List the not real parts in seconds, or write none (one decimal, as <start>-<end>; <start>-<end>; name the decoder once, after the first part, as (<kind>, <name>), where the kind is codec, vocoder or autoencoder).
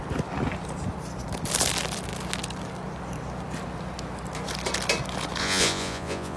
5.4-6.4 (vocoder, Vocos)